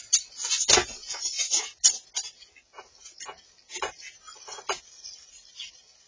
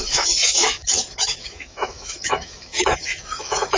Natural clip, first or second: first